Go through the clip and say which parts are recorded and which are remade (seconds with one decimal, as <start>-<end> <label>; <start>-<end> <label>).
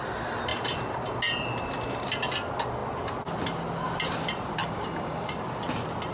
0.0-4.6 recorded; 4.6-5.3 remade; 5.3-6.1 recorded